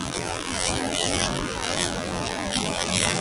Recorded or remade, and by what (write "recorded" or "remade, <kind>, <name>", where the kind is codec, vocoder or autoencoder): remade, vocoder, BigVGAN v2